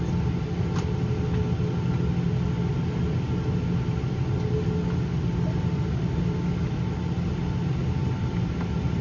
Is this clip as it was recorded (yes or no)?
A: yes